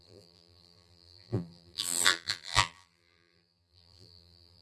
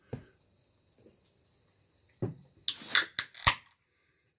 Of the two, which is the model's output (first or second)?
first